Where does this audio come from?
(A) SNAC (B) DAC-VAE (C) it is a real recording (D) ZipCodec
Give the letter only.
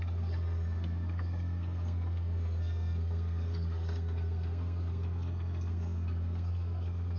A